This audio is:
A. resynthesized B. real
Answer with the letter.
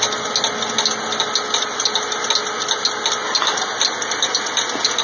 B